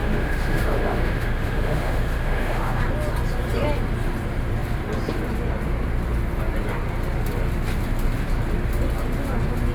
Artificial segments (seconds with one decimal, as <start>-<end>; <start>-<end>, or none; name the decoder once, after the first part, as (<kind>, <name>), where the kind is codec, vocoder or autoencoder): 0.0-2.8 (autoencoder, DAC-VAE)